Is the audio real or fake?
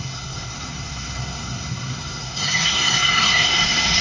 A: fake